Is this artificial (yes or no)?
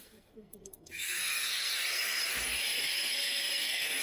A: yes